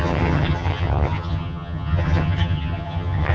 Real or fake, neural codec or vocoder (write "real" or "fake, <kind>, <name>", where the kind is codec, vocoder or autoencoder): fake, vocoder, HiFi-GAN